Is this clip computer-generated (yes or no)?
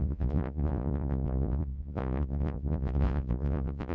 yes